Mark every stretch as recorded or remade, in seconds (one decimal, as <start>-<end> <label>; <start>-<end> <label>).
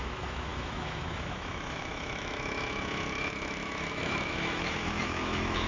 0.0-5.7 remade